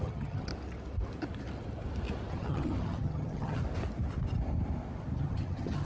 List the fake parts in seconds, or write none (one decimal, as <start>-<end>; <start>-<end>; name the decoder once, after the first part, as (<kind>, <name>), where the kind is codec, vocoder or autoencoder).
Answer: 0.0-0.5 (vocoder, HiFi-GAN); 2.3-3.6; 5.2-5.8